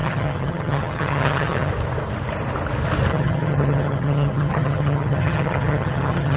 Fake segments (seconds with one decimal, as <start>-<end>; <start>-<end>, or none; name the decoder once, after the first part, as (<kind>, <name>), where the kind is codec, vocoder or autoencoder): 0.0-1.7 (vocoder, HiFi-GAN); 3.1-6.4

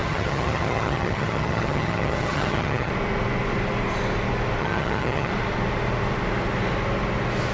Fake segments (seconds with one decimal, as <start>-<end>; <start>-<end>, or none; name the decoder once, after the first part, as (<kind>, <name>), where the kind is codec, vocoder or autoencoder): 0.0-2.9 (vocoder, HiFi-GAN); 4.6-5.3

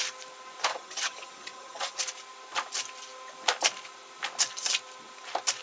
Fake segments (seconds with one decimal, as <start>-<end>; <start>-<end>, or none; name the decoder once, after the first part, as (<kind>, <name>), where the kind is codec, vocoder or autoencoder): 0.7-2.0 (vocoder, HiFi-GAN)